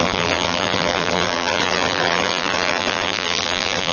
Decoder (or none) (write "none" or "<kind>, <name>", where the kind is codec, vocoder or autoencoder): vocoder, BigVGAN v2